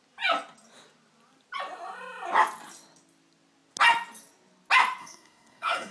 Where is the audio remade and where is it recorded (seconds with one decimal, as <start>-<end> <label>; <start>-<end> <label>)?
0.0-5.0 recorded; 5.0-5.9 remade